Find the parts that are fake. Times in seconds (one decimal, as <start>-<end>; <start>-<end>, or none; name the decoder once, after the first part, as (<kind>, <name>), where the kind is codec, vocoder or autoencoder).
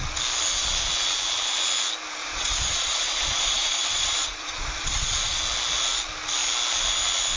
2.2-5.4 (vocoder, Vocos)